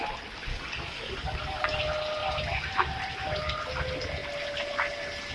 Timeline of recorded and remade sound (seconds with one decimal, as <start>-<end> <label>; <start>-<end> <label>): 0.0-0.5 recorded; 0.5-1.8 remade; 1.8-5.3 recorded